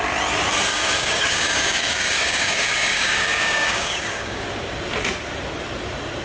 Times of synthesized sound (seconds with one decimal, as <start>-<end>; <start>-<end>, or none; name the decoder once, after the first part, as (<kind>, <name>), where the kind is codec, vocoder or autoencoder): 0.7-4.4 (codec, DAC)